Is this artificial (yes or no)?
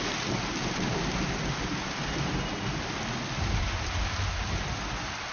no